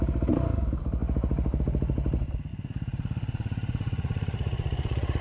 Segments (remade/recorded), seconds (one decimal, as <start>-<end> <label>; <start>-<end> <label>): 0.0-2.5 recorded; 2.5-5.2 remade